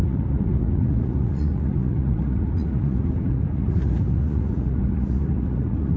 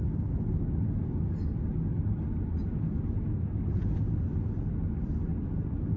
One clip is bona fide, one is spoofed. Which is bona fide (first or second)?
second